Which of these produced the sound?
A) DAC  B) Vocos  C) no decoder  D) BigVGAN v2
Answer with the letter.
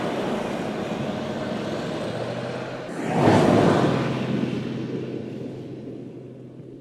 C